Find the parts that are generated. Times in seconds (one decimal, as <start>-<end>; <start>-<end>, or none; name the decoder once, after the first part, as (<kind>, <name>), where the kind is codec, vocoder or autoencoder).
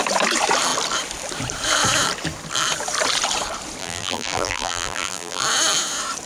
3.8-5.4 (vocoder, BigVGAN v2)